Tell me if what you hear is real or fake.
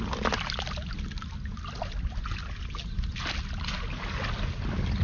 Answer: real